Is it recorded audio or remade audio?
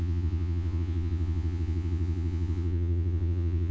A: remade